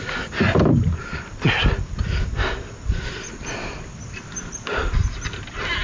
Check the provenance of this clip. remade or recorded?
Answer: recorded